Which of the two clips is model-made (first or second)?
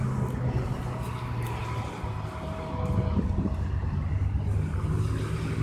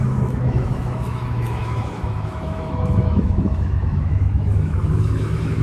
second